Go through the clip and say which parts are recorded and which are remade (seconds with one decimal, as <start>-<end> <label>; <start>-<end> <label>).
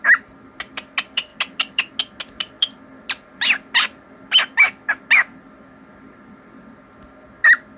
0.0-7.8 recorded